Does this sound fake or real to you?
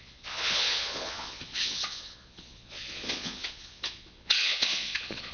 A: fake